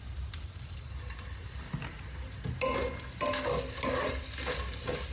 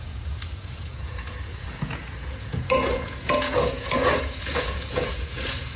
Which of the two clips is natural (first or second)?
first